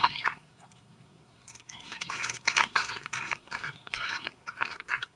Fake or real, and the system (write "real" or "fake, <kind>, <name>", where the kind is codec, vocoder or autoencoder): fake, codec, SNAC